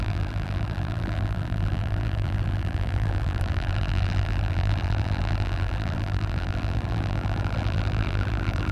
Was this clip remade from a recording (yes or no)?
yes